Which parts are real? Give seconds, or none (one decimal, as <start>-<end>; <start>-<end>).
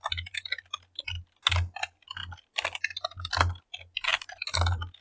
0.0-5.0